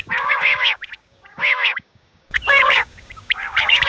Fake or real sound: fake